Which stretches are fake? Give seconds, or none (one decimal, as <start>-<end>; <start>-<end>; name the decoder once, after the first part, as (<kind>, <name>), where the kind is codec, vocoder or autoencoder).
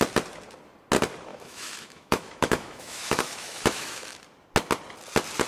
1.3-4.2 (autoencoder, DAC-VAE)